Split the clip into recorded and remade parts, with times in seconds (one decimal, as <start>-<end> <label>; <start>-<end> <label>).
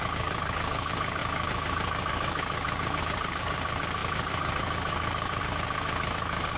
0.0-6.6 remade